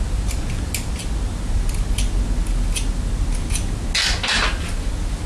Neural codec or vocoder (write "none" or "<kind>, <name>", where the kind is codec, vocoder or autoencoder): none